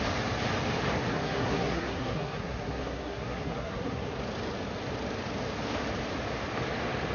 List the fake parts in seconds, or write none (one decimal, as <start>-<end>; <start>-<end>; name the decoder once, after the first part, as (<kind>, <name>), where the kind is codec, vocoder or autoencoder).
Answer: 1.1-4.1 (codec, SNAC)